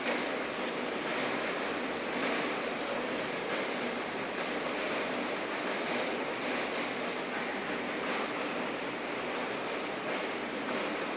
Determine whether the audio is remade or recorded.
recorded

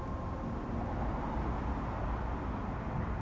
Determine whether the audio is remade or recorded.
recorded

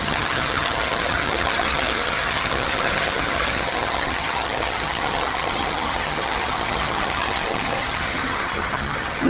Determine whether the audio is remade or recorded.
remade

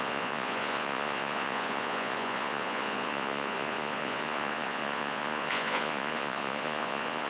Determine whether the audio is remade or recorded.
remade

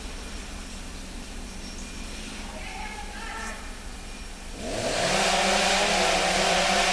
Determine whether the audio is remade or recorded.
recorded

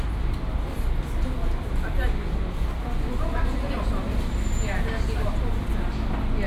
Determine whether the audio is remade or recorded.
recorded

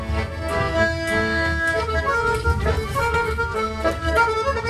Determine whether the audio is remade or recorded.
remade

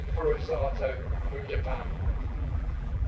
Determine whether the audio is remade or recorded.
remade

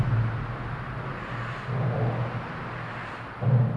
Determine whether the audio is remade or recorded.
recorded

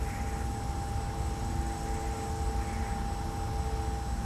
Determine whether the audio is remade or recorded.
recorded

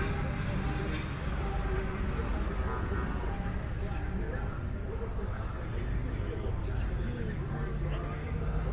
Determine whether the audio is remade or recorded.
recorded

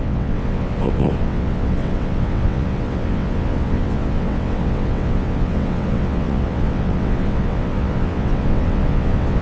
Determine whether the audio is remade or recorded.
remade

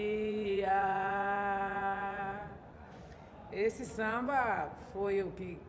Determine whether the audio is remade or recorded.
remade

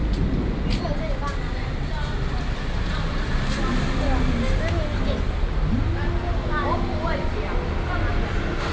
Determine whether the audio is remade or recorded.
recorded